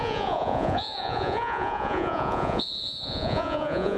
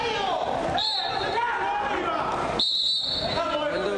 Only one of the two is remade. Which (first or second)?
first